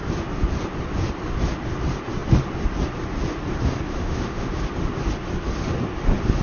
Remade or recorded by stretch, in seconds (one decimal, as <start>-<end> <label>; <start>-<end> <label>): 0.0-3.9 recorded; 3.9-4.5 remade; 4.5-6.4 recorded